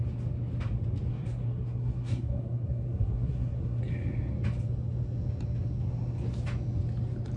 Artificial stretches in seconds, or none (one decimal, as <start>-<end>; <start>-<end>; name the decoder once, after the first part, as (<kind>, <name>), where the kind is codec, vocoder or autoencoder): 1.1-3.8 (codec, SNAC)